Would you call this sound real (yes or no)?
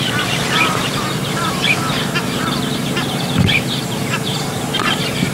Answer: no